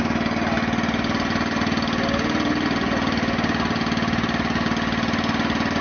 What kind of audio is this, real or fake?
real